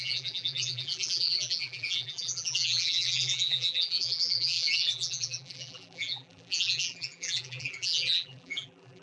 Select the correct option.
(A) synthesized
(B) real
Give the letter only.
A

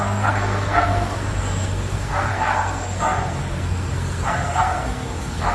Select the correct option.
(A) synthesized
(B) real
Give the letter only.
A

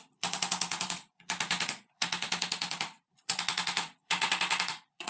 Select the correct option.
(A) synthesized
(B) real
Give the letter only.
A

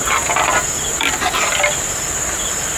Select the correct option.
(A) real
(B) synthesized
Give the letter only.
A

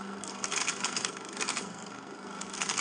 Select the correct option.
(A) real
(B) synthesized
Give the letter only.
B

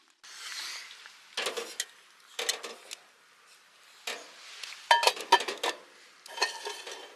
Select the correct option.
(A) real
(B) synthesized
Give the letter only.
A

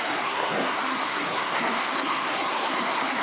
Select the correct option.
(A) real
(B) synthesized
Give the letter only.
B